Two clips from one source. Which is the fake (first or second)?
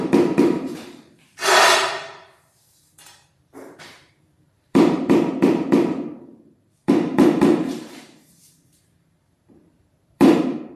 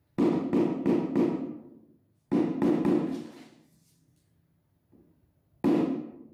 first